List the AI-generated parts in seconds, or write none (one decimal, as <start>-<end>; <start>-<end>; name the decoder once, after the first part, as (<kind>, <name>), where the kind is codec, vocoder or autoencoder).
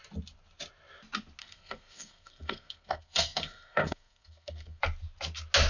1.4-4.8 (codec, SNAC)